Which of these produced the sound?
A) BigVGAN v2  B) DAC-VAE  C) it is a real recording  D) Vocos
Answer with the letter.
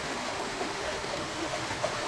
B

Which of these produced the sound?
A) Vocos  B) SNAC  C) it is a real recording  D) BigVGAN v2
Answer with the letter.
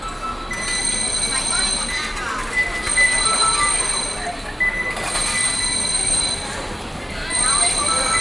C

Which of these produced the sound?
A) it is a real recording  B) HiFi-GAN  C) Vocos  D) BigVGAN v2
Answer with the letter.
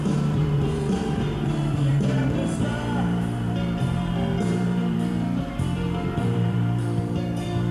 D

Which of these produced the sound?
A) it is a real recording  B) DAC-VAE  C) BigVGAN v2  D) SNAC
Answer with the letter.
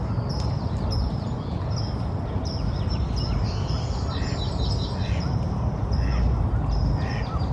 A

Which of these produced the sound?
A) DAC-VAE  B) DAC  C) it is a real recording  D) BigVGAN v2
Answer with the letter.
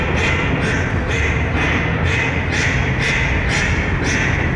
C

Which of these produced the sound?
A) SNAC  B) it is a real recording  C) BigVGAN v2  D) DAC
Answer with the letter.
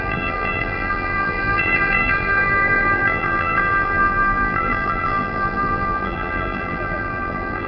C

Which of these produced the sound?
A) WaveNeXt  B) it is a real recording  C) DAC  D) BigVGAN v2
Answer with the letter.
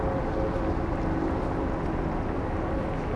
B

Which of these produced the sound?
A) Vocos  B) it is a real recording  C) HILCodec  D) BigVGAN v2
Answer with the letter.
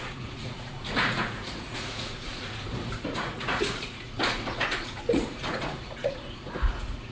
A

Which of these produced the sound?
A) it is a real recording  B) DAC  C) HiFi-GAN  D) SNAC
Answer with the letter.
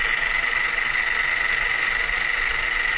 A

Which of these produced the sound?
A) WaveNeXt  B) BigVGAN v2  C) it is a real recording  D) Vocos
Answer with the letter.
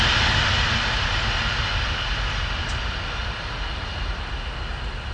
C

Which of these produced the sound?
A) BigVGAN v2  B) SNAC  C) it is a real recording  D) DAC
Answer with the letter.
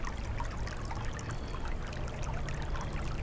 C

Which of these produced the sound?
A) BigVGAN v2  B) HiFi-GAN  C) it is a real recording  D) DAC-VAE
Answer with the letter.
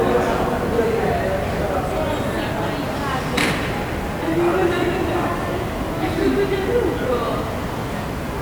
C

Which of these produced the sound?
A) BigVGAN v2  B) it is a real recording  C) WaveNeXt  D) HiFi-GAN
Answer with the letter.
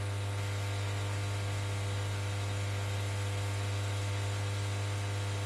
B